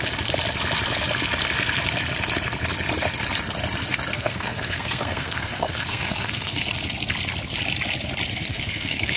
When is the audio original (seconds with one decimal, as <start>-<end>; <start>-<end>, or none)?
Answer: 0.0-4.1; 6.6-8.3